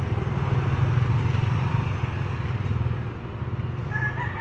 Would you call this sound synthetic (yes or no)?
no